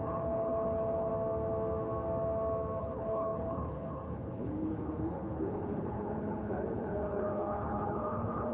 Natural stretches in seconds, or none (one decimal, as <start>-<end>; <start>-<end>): 1.1-2.8